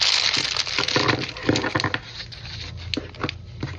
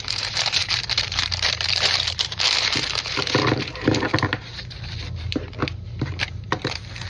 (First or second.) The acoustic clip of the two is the first